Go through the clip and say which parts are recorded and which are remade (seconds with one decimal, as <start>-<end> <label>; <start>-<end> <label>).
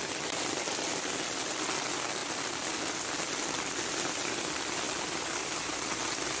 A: 0.0-6.4 recorded